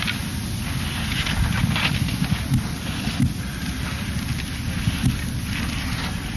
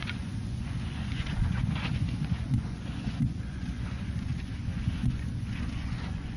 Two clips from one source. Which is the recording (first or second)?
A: first